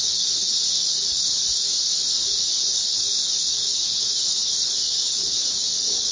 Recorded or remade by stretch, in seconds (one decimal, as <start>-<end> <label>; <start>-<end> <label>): 0.0-6.1 remade